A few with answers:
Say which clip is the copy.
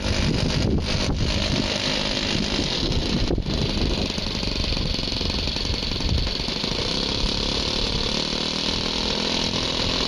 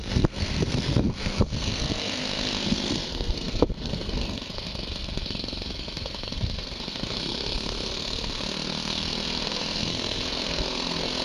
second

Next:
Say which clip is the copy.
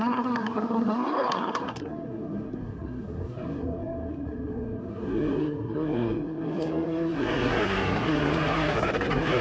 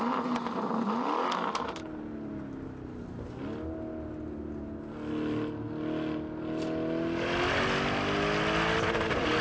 first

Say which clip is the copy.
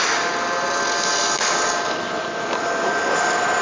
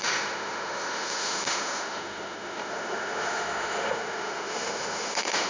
second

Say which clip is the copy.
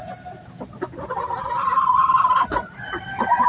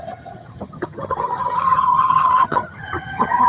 second